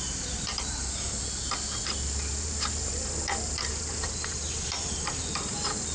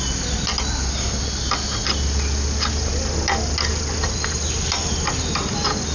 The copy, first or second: first